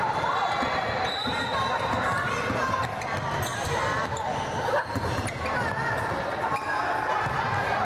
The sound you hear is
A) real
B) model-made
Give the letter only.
A